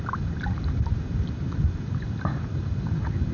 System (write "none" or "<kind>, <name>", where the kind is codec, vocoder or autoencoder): none